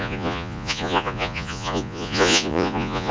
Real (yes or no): no